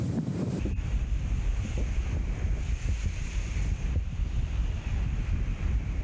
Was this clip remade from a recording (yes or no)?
yes